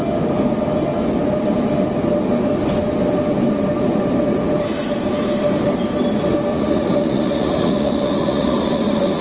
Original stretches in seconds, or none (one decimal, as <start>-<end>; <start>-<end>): 0.0-6.5